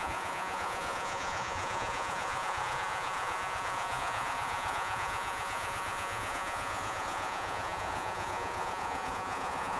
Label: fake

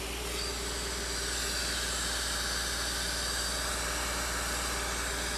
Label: real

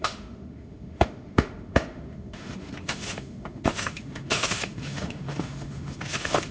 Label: fake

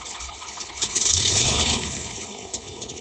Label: fake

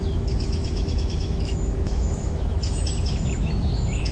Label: fake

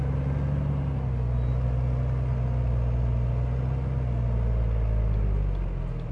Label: real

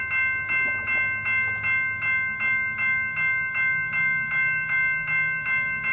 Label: real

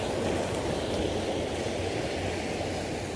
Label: real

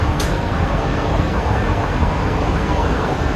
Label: fake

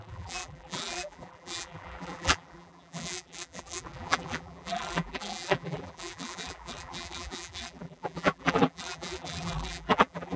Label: fake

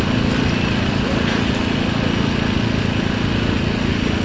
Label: real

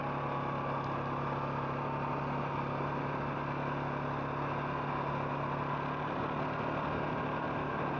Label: real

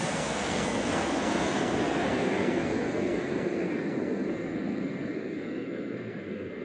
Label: fake